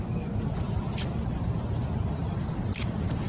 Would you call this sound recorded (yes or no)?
yes